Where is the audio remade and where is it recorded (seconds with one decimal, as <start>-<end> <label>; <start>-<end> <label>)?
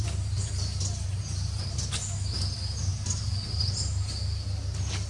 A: 0.0-5.1 recorded